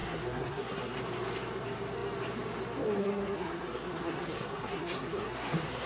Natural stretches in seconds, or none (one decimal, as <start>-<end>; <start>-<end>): 1.0-3.0